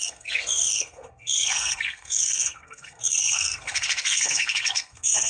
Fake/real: fake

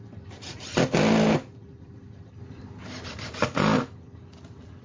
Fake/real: real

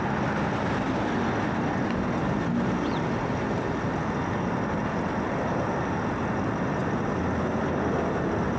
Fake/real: real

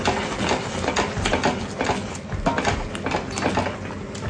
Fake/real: real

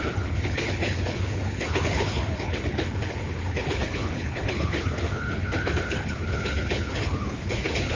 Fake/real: fake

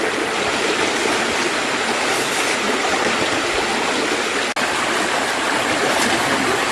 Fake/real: real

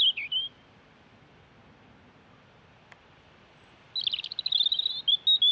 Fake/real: real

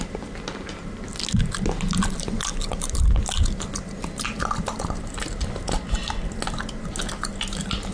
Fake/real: real